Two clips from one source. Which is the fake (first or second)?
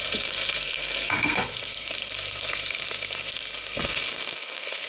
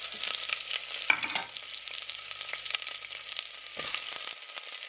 first